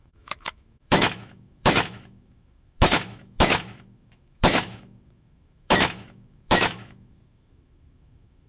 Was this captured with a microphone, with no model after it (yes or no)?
no